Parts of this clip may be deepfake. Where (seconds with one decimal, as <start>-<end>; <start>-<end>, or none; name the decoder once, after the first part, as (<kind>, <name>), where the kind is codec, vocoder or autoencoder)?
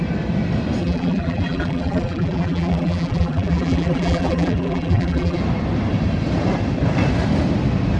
0.8-5.4 (vocoder, BigVGAN v2)